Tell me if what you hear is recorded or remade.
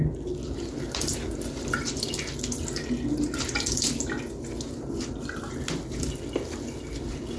recorded